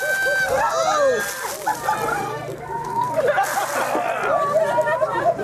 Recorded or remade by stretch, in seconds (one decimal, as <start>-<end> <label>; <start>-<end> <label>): 0.0-2.1 recorded; 2.1-3.1 remade; 3.1-5.4 recorded